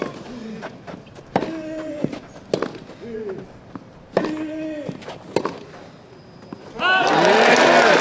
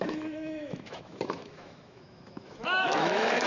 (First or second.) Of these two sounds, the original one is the first